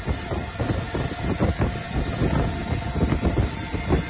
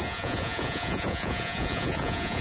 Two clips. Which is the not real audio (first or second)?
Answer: second